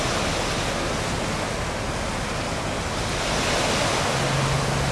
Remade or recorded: recorded